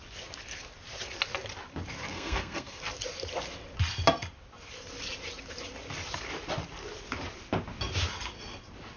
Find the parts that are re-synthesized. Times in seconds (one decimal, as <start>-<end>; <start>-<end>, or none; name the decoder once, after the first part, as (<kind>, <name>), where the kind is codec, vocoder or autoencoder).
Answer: 2.1-2.8 (codec, SNAC)